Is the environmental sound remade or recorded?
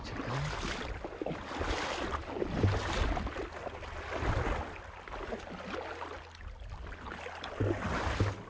recorded